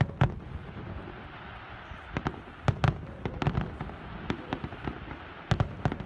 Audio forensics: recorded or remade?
recorded